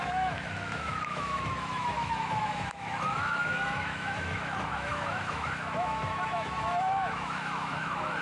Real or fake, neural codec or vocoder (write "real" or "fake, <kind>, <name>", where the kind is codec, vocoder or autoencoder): fake, autoencoder, DAC-VAE